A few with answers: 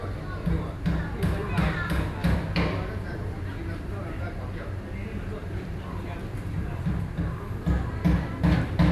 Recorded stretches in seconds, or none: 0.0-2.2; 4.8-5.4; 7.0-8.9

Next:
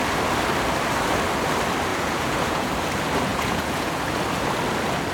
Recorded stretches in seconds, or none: 0.0-1.9; 2.7-3.3; 4.0-5.1

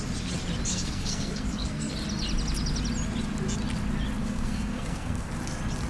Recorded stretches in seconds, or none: 0.0-0.7; 1.9-4.2; 5.3-5.9

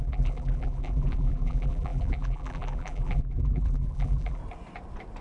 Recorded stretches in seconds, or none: 4.4-5.2

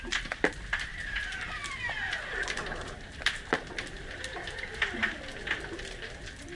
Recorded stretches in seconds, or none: 0.9-2.2

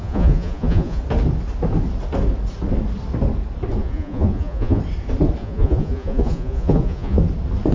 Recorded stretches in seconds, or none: 1.0-3.8; 4.8-5.4; 7.2-7.7